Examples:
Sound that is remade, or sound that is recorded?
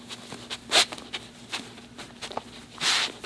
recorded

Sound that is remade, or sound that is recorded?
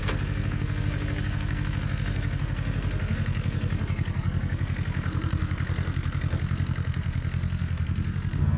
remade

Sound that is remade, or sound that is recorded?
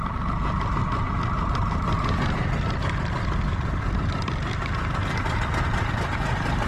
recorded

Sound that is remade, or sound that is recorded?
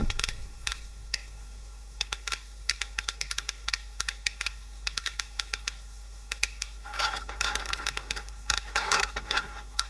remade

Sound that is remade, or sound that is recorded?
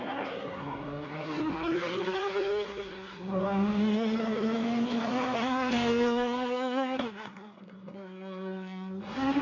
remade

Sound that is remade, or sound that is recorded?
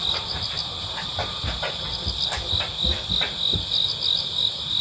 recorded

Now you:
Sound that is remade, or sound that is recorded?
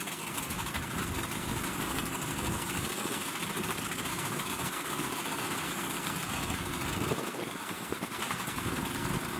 remade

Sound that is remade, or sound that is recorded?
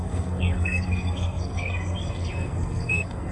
remade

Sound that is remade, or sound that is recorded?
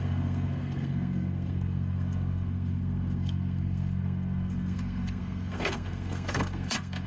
remade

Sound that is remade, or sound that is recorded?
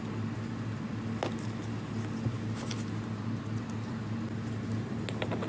recorded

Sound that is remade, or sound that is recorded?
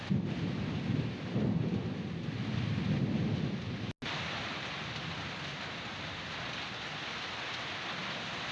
recorded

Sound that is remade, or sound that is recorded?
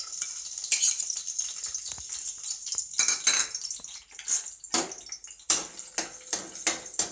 recorded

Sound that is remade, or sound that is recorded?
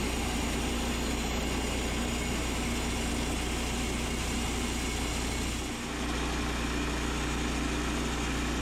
recorded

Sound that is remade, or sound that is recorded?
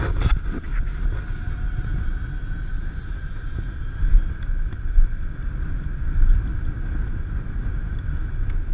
recorded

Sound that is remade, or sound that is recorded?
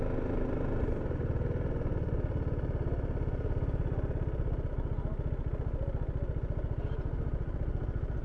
recorded